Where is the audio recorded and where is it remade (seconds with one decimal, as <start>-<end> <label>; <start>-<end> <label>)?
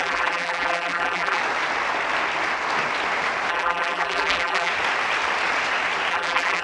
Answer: 0.0-1.4 remade; 1.4-3.5 recorded; 3.5-4.7 remade; 4.7-6.1 recorded; 6.1-6.6 remade